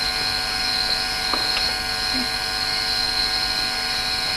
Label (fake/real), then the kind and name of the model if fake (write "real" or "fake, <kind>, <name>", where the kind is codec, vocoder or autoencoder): real